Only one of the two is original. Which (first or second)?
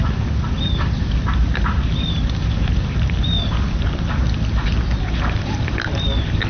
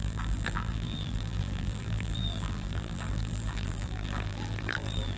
first